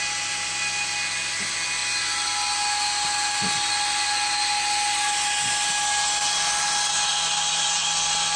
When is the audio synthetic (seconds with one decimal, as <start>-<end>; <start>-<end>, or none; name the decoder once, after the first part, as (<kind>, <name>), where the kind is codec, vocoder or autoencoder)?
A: none